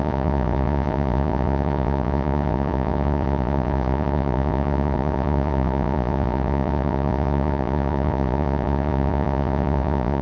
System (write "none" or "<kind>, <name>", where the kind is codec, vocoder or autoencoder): vocoder, Vocos